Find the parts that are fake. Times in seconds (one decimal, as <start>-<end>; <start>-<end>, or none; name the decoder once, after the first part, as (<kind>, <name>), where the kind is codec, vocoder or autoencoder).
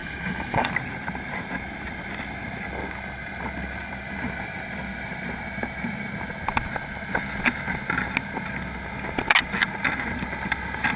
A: 0.0-0.7 (autoencoder, DAC-VAE)